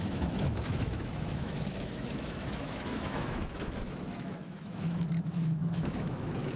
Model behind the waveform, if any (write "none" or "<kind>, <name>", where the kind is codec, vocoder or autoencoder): autoencoder, DAC-VAE